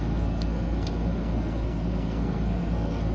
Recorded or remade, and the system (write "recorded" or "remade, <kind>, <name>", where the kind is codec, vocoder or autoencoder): remade, codec, SNAC